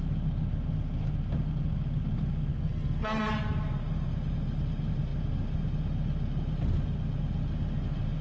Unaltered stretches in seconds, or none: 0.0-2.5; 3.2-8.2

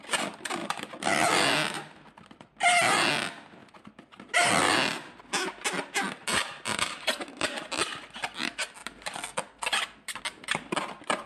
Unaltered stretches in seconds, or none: 0.0-3.6; 4.5-6.2; 7.1-11.3

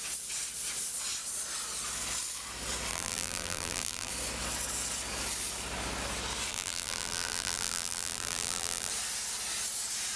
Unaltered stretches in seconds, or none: 0.0-2.9; 4.1-6.5; 8.9-10.2

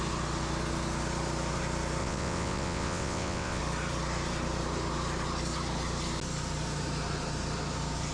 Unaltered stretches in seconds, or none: 0.0-2.0; 3.6-8.1

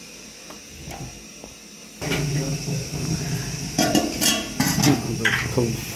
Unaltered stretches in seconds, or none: 0.0-2.5; 4.2-6.0

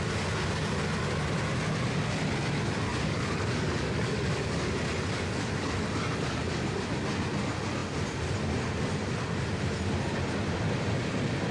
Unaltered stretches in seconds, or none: 0.0-2.9; 4.7-11.5

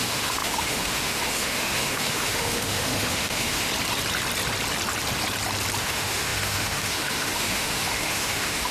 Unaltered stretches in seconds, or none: 3.7-5.8

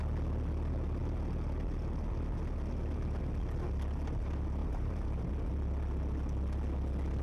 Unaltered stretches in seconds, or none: 0.0-4.6; 5.3-7.2